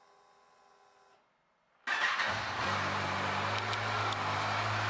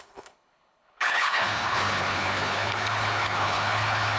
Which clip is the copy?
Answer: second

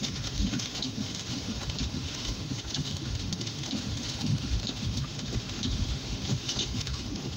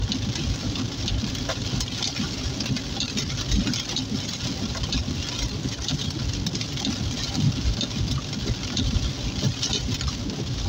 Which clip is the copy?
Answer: first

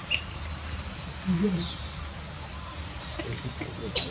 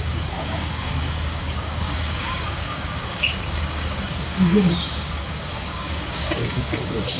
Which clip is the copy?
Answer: second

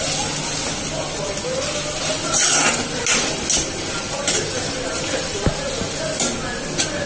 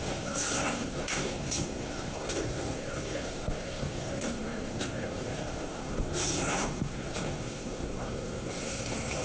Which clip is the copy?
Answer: second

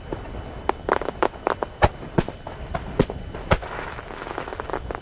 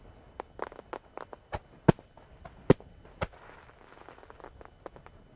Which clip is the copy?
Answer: first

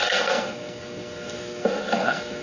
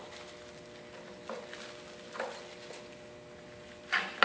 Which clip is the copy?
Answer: first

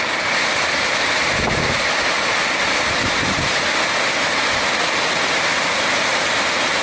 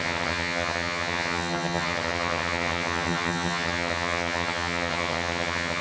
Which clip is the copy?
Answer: second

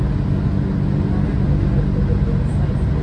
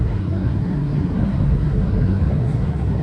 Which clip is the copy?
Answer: second